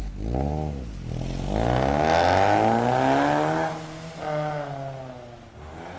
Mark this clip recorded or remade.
recorded